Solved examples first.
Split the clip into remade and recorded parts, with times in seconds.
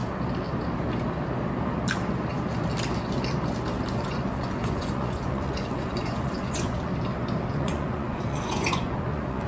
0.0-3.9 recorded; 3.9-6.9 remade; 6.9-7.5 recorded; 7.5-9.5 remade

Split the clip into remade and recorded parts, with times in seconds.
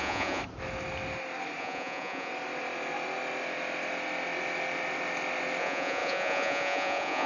0.0-0.4 remade; 0.4-1.6 recorded; 1.6-2.3 remade; 2.3-5.6 recorded; 5.6-7.3 remade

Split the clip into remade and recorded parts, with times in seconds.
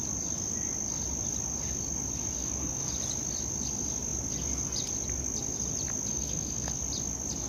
0.0-2.4 recorded; 2.4-2.9 remade; 2.9-6.1 recorded; 6.1-6.8 remade; 6.8-7.5 recorded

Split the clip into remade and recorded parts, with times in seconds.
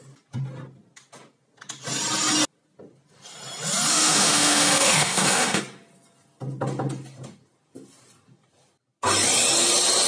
0.0-3.9 recorded; 3.9-5.6 remade; 5.6-10.1 recorded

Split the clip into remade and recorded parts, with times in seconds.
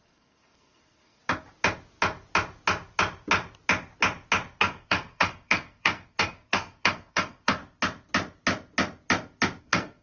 0.0-1.2 remade; 1.2-4.6 recorded; 4.6-7.6 remade; 7.6-9.6 recorded; 9.6-10.0 remade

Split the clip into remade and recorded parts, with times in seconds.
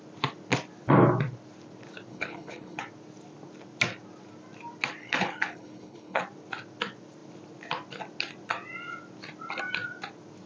0.0-2.1 recorded; 2.1-2.8 remade; 2.8-5.0 recorded; 5.0-6.2 remade; 6.2-10.5 recorded